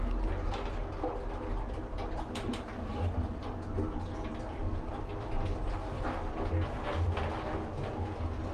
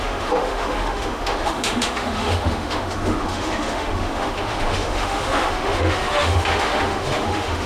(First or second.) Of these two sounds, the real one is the first